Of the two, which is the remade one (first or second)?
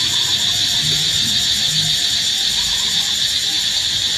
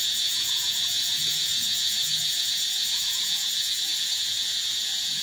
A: second